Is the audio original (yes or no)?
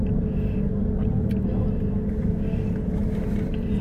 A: yes